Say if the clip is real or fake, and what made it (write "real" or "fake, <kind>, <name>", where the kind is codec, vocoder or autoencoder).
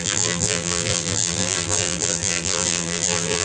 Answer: fake, vocoder, BigVGAN v2